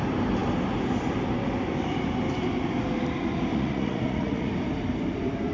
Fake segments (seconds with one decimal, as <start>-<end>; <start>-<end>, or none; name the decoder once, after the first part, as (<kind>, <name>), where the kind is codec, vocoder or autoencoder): 3.5-4.5 (vocoder, Vocos)

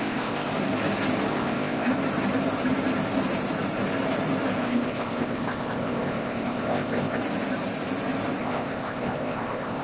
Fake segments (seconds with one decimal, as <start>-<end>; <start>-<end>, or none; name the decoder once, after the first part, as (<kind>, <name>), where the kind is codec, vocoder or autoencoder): 0.0-0.5 (codec, ZipCodec); 1.3-1.9; 4.6-7.2; 8.4-9.8

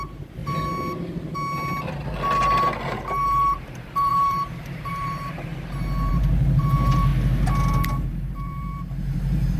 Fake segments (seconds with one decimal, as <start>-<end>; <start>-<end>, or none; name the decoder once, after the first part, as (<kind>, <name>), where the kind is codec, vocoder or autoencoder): 0.0-0.4 (vocoder, BigVGAN v2); 2.8-5.5; 6.1-7.1; 8.0-9.6